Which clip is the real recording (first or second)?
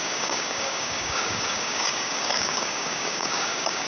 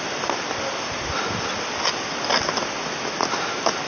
second